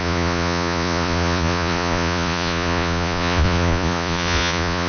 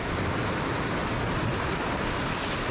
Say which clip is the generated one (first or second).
first